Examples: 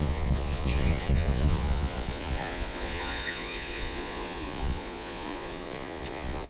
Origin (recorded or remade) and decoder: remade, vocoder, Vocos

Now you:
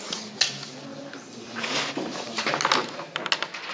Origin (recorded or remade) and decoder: recorded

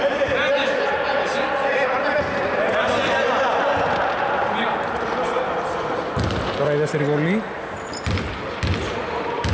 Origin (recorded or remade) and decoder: recorded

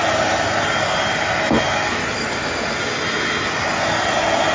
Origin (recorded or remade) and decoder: recorded